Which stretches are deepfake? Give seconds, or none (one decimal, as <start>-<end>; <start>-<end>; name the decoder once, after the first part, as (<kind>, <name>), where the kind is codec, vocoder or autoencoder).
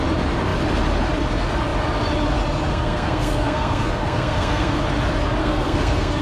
2.7-4.8 (codec, SNAC); 5.4-6.2